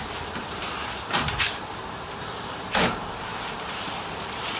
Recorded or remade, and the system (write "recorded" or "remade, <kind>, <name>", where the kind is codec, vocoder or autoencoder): remade, vocoder, BigVGAN v2